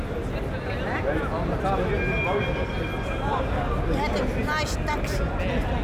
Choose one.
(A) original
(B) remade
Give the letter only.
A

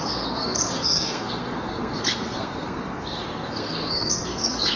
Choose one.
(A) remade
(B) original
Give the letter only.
A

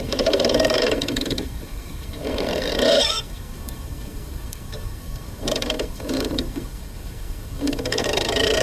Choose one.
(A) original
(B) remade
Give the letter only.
B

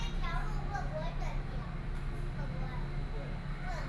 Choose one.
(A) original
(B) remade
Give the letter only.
A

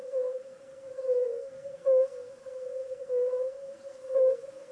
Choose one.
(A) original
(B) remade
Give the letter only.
B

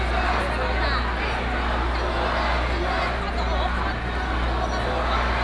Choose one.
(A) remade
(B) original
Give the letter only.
B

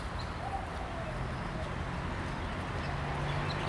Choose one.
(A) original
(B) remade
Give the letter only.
A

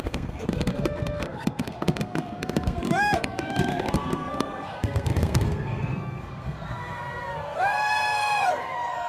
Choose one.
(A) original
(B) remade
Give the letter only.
B